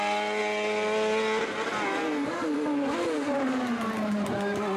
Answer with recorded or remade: recorded